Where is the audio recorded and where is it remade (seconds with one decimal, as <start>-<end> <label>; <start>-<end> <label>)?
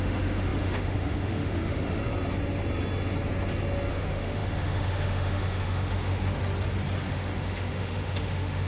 0.0-2.0 remade; 2.0-3.9 recorded; 3.9-6.4 remade; 6.4-7.1 recorded; 7.1-8.7 remade